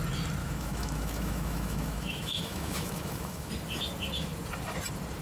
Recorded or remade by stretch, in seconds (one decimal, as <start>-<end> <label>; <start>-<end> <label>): 0.0-0.4 recorded; 0.4-3.5 remade; 3.5-5.2 recorded